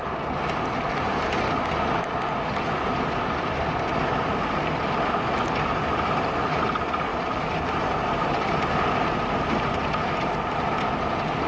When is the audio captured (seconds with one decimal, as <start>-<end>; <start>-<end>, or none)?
0.0-7.1; 8.6-11.5